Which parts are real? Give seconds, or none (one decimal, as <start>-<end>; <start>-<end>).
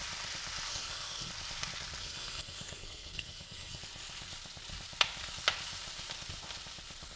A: 0.0-0.7; 1.3-2.0; 3.8-7.2